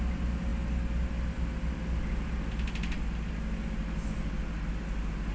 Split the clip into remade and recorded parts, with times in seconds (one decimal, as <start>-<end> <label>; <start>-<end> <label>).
0.0-5.3 recorded